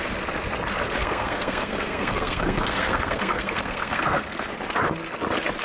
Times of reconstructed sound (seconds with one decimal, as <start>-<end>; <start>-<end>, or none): 1.0-4.4

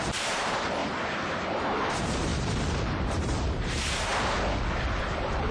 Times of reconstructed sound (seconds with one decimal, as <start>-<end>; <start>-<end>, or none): 0.0-0.8; 1.9-4.1; 5.0-5.5

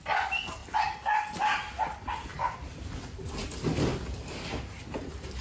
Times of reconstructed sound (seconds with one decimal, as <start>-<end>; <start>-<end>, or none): none

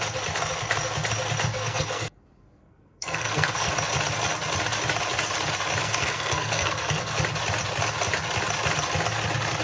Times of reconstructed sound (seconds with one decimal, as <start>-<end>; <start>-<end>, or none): 1.5-3.7; 5.8-7.2

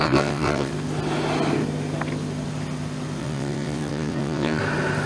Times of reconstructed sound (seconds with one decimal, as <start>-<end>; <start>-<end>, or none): 0.0-0.7; 3.2-4.6

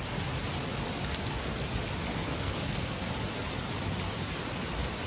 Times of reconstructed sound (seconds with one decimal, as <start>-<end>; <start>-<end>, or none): 2.1-3.1

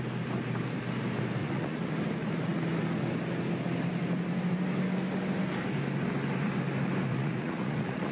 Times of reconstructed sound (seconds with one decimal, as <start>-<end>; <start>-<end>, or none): 1.4-1.9; 7.1-8.1

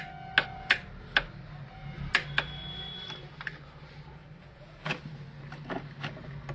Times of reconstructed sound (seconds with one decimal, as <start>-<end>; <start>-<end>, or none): 4.4-5.0